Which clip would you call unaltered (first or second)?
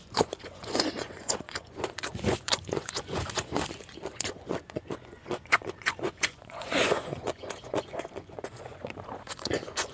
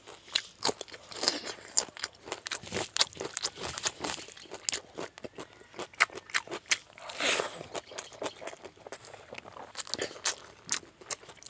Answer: second